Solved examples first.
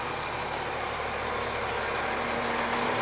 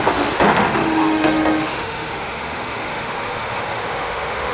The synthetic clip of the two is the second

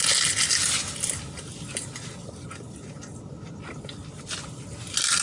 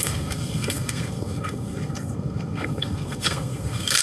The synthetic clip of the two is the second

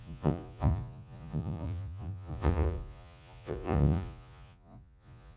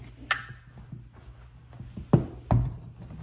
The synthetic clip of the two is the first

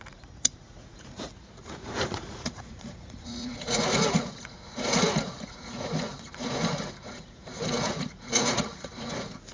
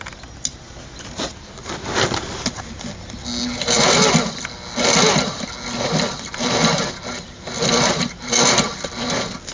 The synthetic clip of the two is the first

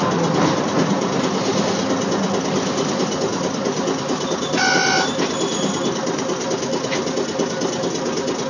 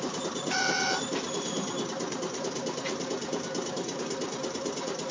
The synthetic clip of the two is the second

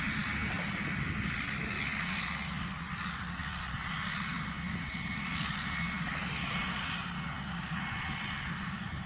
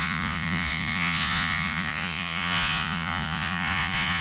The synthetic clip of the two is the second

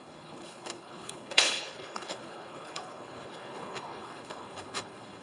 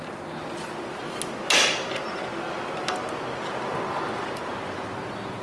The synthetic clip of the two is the first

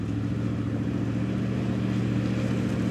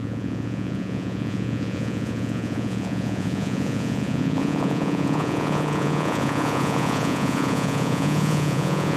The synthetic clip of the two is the second